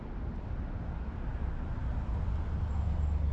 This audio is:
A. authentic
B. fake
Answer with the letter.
A